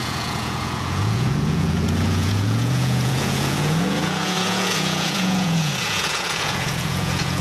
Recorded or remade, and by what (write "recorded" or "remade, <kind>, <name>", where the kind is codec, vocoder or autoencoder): remade, vocoder, Vocos